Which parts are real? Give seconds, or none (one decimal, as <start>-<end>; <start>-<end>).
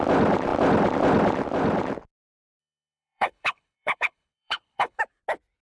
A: 0.0-2.6; 5.0-5.7